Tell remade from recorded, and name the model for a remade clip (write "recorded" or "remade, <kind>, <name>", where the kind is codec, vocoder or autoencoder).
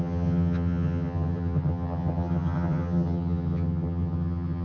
remade, vocoder, HiFi-GAN